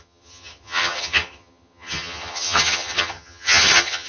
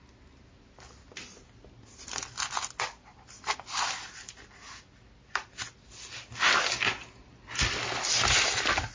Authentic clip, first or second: second